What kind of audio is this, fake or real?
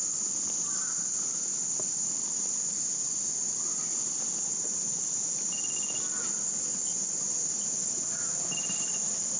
real